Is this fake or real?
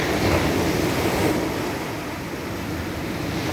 real